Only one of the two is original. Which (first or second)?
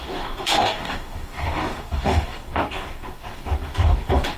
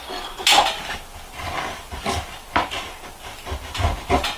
second